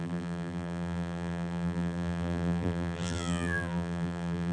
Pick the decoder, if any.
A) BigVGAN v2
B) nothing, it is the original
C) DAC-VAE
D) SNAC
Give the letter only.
A